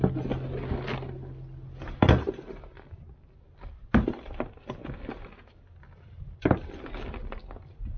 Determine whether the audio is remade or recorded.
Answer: recorded